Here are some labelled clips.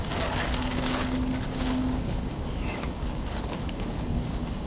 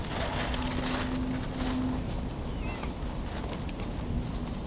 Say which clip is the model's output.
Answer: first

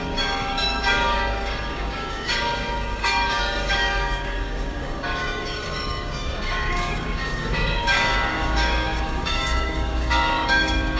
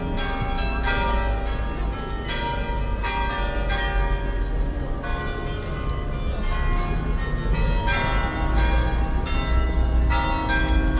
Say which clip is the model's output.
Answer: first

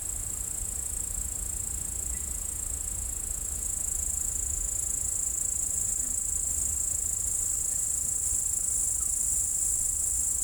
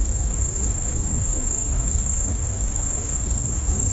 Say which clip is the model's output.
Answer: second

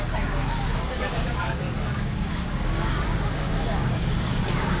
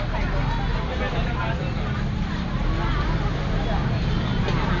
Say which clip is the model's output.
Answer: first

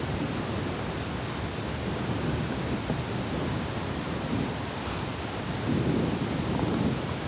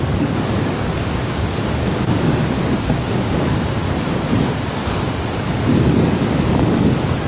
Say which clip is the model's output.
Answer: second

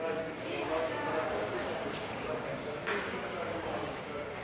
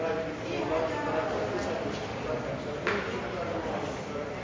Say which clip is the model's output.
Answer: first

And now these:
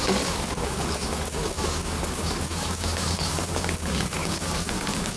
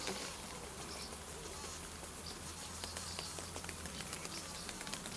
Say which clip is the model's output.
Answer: first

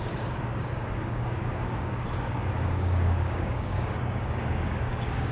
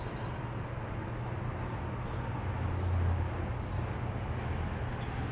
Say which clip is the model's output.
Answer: first